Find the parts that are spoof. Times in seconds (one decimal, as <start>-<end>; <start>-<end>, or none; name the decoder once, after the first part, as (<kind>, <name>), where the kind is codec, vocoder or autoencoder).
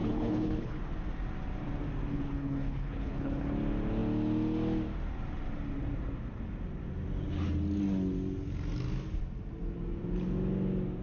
0.0-0.8 (codec, HILCodec); 2.1-3.5